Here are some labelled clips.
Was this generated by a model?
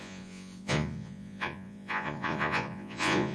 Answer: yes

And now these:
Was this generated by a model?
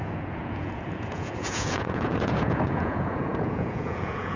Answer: yes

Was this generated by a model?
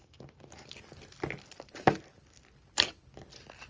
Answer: no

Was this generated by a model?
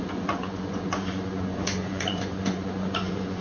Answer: yes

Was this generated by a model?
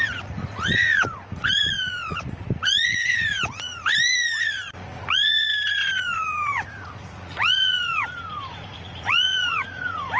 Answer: yes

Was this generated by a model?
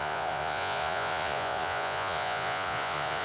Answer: yes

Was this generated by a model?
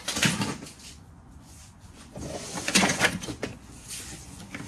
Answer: yes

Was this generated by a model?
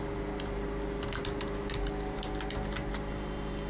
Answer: no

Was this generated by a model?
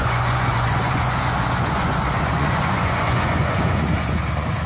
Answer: yes